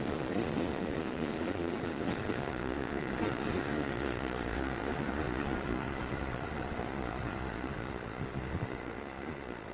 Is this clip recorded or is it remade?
remade